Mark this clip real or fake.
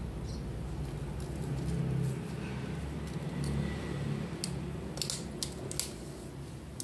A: real